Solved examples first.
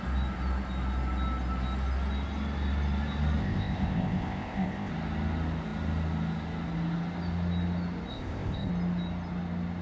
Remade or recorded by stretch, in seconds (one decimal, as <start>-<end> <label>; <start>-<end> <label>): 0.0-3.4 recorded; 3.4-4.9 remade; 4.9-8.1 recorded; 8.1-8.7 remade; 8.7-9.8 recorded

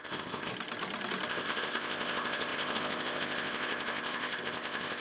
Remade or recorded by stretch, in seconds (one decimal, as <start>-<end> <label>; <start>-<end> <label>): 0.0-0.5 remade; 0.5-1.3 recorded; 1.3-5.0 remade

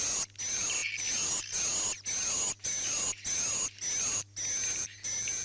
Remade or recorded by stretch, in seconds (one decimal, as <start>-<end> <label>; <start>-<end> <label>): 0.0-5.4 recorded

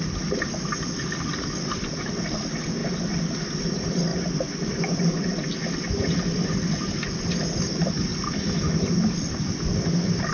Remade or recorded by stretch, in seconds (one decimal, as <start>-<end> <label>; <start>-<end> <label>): 0.0-10.3 recorded